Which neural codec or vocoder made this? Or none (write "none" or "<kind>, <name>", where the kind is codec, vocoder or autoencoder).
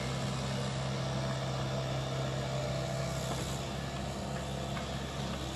none